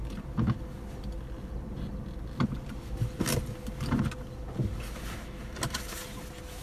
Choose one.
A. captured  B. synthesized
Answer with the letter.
A